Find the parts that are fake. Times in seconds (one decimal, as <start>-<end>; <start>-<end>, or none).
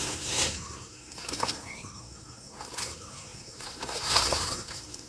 0.0-5.1